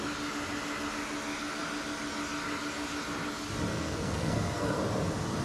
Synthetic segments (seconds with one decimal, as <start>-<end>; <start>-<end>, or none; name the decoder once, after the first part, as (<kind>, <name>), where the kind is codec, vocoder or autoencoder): 3.7-4.8 (codec, SNAC)